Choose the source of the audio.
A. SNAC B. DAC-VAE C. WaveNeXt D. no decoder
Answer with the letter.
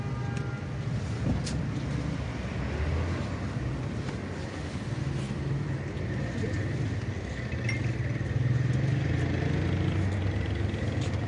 D